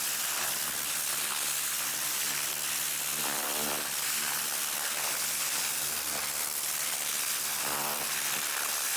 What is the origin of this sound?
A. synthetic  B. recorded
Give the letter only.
B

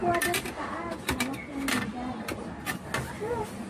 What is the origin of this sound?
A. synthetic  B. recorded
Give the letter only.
B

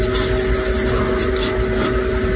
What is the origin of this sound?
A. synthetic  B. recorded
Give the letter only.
B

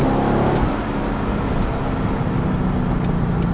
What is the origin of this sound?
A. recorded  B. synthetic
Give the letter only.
A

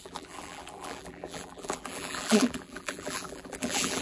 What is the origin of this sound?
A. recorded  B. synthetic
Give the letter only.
B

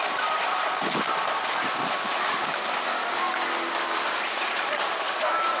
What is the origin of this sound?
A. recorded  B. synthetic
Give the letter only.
A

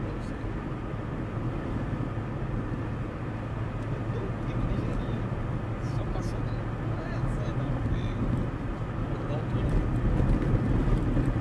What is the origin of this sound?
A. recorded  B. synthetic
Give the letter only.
A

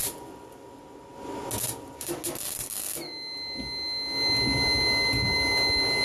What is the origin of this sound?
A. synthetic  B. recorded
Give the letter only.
B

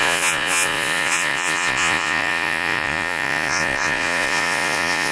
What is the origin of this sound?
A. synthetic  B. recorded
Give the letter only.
A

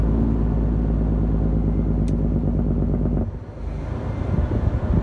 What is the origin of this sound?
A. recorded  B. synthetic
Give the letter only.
A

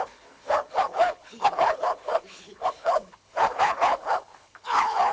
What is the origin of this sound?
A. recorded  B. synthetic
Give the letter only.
B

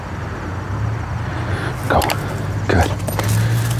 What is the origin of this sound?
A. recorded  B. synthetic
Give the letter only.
A